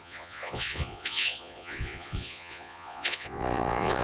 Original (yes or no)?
no